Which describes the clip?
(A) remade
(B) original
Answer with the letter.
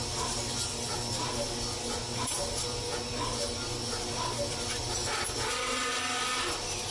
B